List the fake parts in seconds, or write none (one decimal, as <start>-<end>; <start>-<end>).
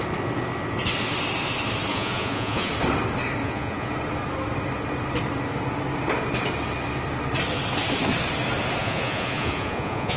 1.9-2.7; 3.4-3.9; 8.8-10.2